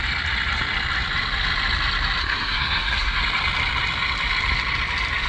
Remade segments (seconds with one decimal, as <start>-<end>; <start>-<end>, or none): 2.2-3.2